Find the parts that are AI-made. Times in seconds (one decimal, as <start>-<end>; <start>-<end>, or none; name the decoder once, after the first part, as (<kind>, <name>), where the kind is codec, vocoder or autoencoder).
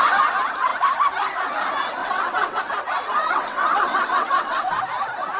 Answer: 2.0-2.6 (vocoder, WaveNeXt); 3.2-4.8